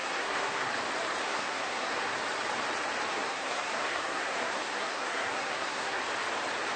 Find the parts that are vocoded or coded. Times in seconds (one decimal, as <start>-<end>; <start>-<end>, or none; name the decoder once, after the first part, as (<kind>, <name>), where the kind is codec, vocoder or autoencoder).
0.0-0.7 (codec, SNAC); 1.2-2.2; 3.1-6.0